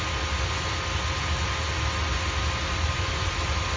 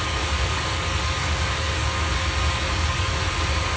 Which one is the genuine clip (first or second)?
first